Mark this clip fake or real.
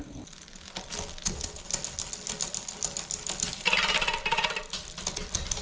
real